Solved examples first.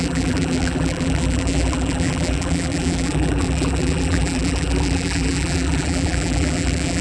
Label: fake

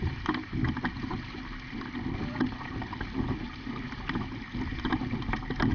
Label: real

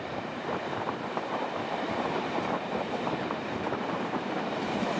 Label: fake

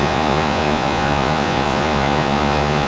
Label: fake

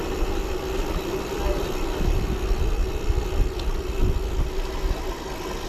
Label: real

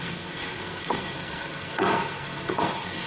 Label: fake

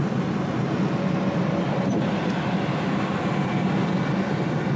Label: real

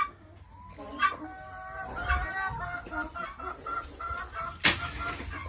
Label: real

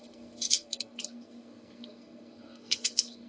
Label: fake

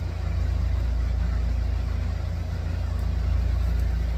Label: real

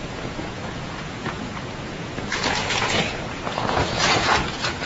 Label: fake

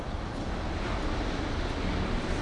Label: real